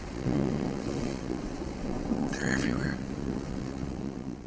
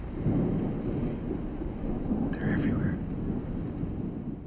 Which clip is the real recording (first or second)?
second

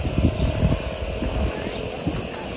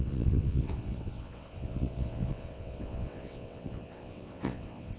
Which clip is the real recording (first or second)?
first